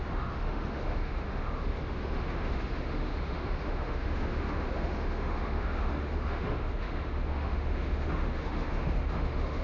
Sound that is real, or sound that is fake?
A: fake